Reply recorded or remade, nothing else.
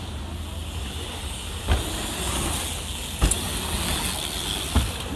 recorded